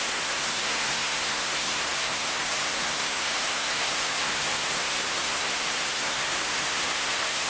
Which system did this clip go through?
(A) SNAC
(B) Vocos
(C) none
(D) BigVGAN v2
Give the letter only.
A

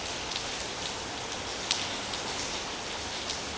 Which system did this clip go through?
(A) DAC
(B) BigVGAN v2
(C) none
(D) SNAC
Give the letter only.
C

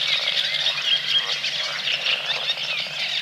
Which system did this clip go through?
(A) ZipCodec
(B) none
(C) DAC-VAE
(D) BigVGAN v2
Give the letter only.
B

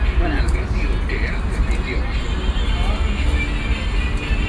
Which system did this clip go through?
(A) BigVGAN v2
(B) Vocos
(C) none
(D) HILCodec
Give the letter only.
C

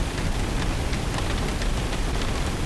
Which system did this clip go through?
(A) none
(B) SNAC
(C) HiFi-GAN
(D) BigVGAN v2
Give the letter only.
A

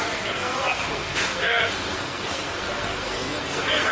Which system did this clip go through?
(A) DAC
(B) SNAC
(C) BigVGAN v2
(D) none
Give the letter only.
B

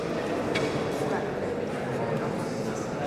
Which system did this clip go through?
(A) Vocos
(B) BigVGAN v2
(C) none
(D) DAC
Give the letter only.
C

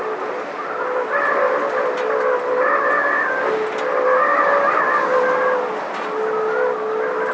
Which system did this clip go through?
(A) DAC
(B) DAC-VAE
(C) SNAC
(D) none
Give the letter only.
D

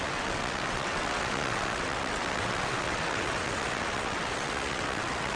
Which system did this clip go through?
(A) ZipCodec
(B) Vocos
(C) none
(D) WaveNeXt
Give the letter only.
D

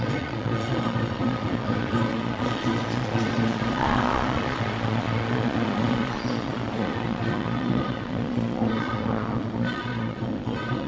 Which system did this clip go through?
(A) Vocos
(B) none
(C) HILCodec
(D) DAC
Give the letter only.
A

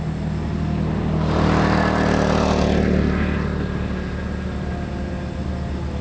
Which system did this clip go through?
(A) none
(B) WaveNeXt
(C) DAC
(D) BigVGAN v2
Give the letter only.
A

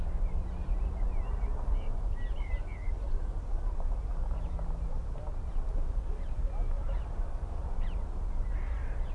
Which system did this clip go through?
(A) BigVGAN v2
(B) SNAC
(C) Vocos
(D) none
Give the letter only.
D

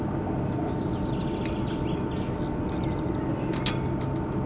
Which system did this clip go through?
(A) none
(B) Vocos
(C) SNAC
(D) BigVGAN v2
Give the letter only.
A